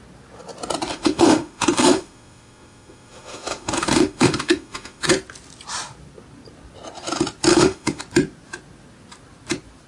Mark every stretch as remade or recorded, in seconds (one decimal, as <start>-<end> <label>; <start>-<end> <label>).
0.0-0.9 recorded; 0.9-5.1 remade; 5.1-7.5 recorded; 7.5-8.0 remade; 8.0-9.9 recorded